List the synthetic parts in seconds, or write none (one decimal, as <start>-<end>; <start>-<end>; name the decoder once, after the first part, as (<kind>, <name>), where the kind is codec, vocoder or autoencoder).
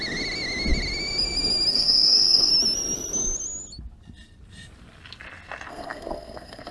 1.7-2.5 (codec, SNAC); 5.7-6.7